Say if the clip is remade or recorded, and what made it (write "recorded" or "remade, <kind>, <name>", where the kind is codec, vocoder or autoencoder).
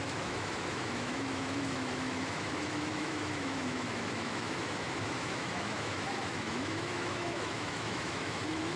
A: remade, autoencoder, DAC-VAE